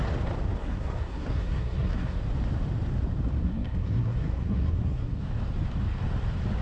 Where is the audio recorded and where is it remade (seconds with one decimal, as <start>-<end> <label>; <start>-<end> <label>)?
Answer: 0.0-0.6 recorded; 0.6-2.2 remade; 2.2-3.4 recorded; 3.4-5.2 remade; 5.2-6.6 recorded